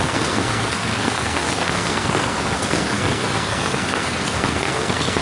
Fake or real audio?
fake